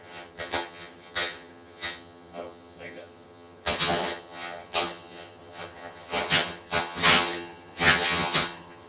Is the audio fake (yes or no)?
yes